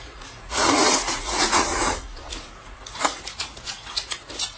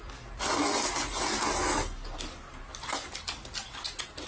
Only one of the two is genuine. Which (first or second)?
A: second